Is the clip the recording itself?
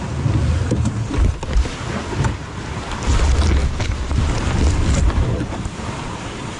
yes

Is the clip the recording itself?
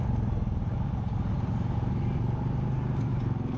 yes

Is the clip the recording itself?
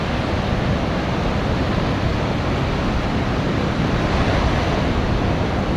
yes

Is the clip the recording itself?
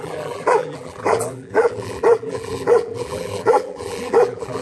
no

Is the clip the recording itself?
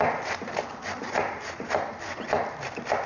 yes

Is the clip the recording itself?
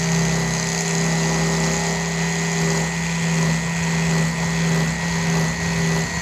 yes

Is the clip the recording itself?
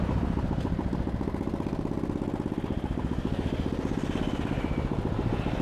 yes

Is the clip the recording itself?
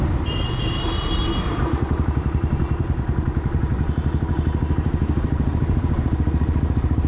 no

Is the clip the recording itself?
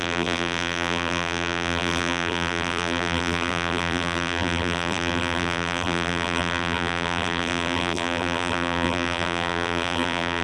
no